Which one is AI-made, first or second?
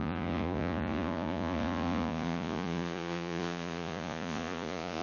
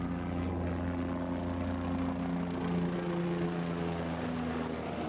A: first